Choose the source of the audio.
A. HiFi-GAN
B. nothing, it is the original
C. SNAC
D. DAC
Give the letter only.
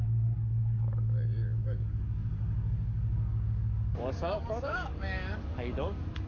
D